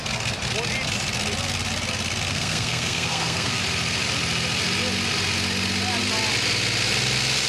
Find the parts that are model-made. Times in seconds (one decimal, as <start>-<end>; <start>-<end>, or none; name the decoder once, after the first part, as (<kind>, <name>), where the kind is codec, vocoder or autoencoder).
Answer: 2.3-3.6 (codec, SNAC)